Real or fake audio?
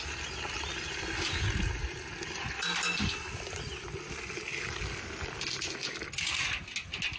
real